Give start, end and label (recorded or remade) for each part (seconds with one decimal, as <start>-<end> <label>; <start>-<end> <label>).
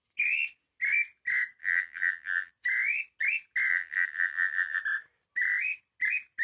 0.0-1.6 recorded; 1.6-2.5 remade; 2.5-3.7 recorded; 3.7-4.8 remade; 4.8-6.4 recorded